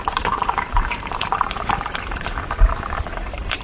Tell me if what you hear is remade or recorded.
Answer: remade